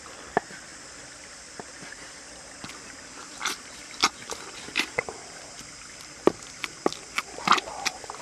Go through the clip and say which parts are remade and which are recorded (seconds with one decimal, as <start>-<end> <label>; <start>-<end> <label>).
0.0-4.0 recorded; 4.0-6.3 remade; 6.3-8.2 recorded